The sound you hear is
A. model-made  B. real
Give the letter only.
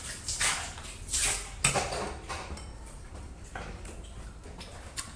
B